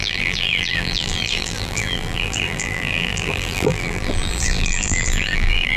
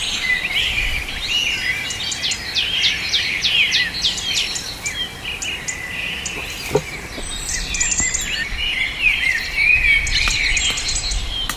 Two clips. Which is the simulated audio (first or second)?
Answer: first